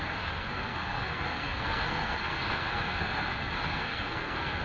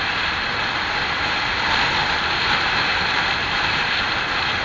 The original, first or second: second